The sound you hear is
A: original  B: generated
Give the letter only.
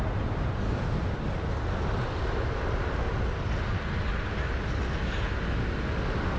A